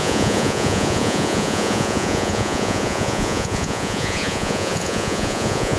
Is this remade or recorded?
remade